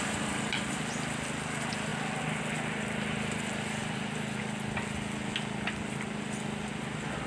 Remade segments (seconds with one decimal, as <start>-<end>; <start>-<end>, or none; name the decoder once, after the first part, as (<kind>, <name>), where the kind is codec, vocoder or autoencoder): none